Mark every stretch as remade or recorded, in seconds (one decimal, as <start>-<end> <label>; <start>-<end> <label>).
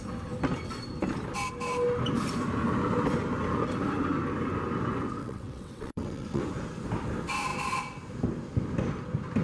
0.0-5.2 recorded; 5.2-6.4 remade; 6.4-9.4 recorded